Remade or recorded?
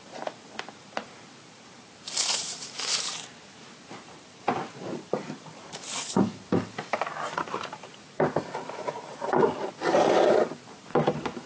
remade